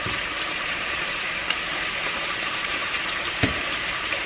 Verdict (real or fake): fake